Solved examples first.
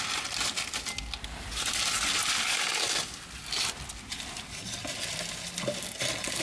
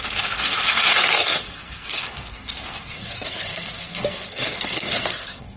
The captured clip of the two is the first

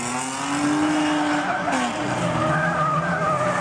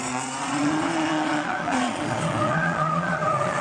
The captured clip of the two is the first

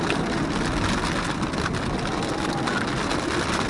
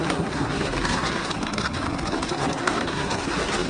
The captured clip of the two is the first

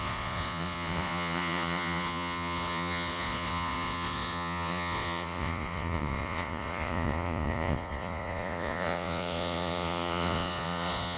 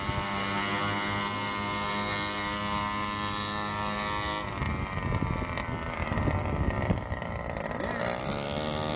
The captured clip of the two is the second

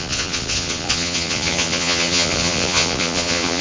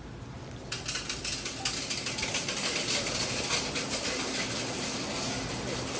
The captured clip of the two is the second